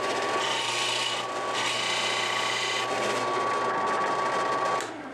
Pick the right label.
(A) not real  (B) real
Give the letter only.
B